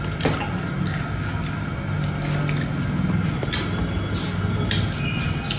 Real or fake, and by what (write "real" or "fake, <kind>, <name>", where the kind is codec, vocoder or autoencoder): real